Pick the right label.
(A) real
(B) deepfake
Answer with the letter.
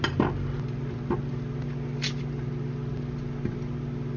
A